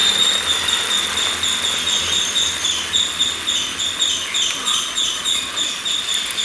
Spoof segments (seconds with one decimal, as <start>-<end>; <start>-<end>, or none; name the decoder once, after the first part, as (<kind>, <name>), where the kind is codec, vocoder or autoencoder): 4.6-5.4 (vocoder, Vocos)